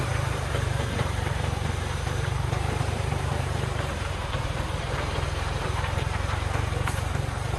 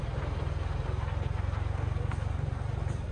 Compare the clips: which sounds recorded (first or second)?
second